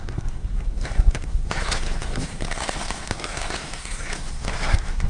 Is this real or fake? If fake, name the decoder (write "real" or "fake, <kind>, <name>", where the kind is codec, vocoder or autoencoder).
fake, codec, SNAC